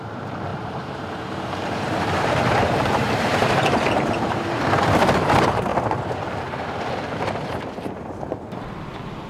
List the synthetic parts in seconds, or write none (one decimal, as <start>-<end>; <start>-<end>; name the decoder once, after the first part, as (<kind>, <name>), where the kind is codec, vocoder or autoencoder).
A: 0.0-5.7 (vocoder, BigVGAN v2)